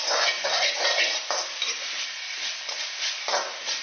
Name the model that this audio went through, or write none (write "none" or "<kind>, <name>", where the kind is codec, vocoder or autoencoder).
none